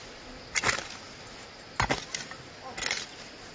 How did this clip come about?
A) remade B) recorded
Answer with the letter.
B